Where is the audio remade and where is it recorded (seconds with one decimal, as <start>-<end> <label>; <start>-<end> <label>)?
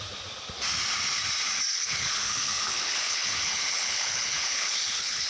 0.0-1.7 recorded; 1.7-5.3 remade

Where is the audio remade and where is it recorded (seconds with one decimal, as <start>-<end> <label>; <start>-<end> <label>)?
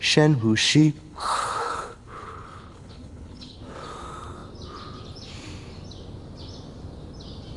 0.0-0.6 recorded; 0.6-3.6 remade; 3.6-7.6 recorded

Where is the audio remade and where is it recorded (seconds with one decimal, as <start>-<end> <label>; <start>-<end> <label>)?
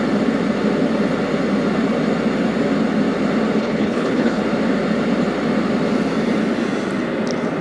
0.0-3.6 recorded; 3.6-4.4 remade; 4.4-7.6 recorded